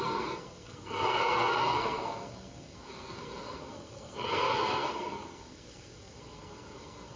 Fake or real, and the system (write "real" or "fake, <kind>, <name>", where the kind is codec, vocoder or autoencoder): fake, codec, SNAC